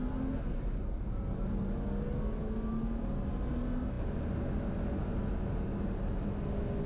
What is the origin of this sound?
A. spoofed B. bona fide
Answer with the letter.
B